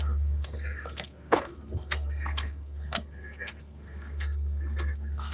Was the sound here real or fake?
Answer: fake